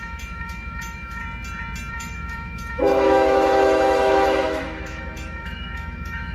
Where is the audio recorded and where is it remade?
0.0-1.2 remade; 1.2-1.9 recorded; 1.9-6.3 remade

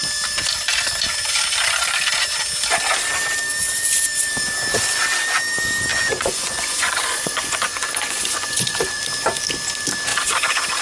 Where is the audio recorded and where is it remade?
0.0-5.9 recorded; 5.9-9.0 remade; 9.0-10.8 recorded

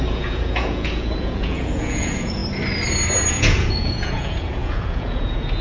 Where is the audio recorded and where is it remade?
0.0-2.4 remade; 2.4-3.3 recorded; 3.3-5.6 remade

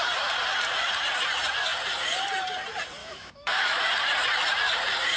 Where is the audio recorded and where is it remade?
0.0-3.0 recorded; 3.0-3.9 remade; 3.9-5.2 recorded

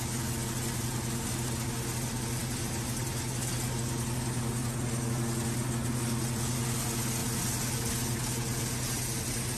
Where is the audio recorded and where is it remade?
0.0-9.6 recorded

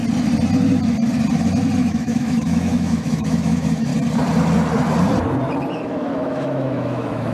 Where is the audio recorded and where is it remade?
0.0-1.8 recorded; 1.8-3.9 remade; 3.9-5.7 recorded; 5.7-7.3 remade

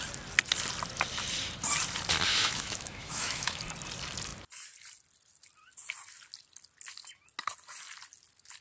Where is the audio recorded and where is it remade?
0.0-2.3 recorded; 2.3-3.6 remade; 3.6-8.6 recorded